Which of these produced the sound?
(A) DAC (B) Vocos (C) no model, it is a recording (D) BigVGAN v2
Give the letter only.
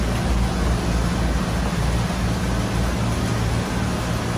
C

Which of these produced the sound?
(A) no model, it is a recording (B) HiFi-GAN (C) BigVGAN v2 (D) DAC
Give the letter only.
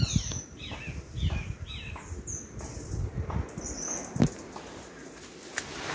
A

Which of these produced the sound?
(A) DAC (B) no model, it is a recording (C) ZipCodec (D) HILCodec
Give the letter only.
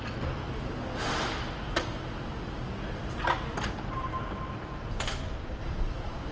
B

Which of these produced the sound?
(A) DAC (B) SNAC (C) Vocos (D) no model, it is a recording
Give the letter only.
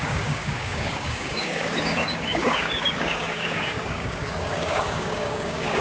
A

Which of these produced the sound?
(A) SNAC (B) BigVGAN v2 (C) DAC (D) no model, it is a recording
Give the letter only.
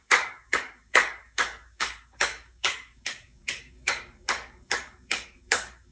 C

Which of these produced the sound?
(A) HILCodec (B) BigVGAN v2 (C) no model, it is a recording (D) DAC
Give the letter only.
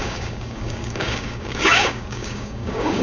D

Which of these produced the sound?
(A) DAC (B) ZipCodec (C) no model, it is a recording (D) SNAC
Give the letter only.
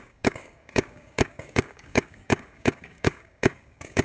A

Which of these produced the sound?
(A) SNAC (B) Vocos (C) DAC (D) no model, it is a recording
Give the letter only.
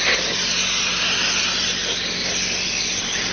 D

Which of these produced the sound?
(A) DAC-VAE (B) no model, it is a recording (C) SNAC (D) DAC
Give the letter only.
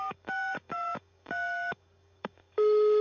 D